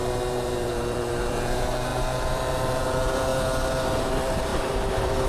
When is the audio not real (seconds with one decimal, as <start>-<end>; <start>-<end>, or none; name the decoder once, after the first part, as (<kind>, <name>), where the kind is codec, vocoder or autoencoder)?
0.0-3.3 (vocoder, BigVGAN v2); 4.0-5.3